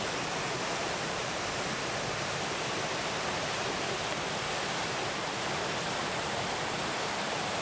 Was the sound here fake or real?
real